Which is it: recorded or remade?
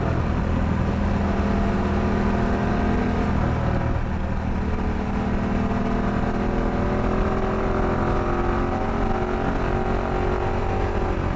recorded